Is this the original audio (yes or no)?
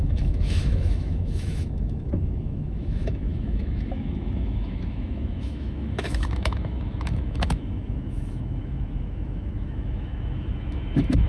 no